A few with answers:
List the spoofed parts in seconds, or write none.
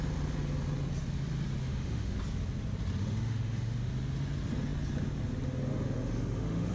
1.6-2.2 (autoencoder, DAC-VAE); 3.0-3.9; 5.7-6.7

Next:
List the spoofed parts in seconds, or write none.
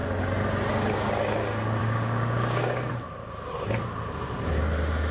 1.8-2.9 (codec, DAC)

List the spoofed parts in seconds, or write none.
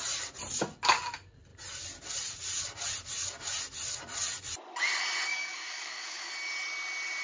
5.3-6.3 (codec, DAC)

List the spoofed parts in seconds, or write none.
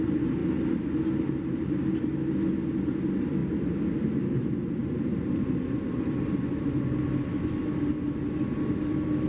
3.4-4.0 (vocoder, BigVGAN v2); 4.8-7.0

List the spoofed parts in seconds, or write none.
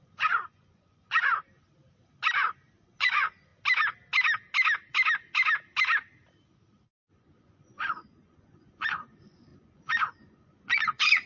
0.0-1.3 (vocoder, Vocos); 2.7-3.5; 6.8-11.3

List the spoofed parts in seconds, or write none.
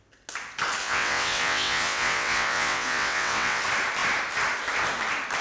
0.8-3.6 (vocoder, WaveNeXt)